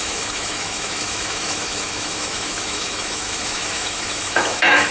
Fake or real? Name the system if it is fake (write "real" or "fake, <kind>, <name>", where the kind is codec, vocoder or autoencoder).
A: fake, autoencoder, DAC-VAE